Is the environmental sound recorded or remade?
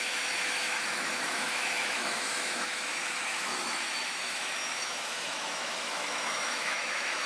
remade